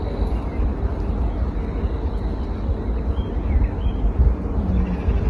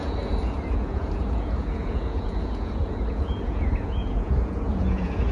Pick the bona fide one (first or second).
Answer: first